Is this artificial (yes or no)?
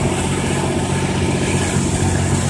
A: no